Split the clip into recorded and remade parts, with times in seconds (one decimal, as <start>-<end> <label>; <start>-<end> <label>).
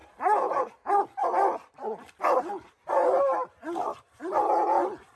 0.0-5.2 recorded